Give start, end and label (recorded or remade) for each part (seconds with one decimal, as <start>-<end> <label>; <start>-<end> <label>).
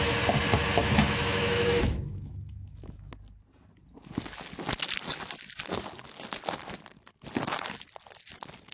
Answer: 0.0-0.8 recorded; 0.8-3.1 remade; 3.1-8.7 recorded